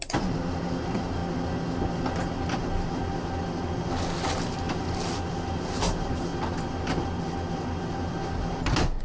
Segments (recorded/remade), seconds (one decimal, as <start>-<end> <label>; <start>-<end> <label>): 0.0-1.2 remade; 1.2-4.7 recorded; 4.7-6.3 remade; 6.3-9.0 recorded